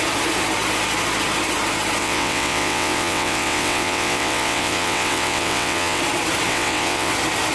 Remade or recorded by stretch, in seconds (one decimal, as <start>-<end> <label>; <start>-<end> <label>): 0.0-2.0 recorded; 2.0-6.0 remade; 6.0-6.5 recorded; 6.5-7.1 remade; 7.1-7.5 recorded